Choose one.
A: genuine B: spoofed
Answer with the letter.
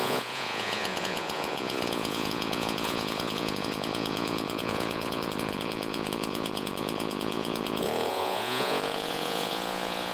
B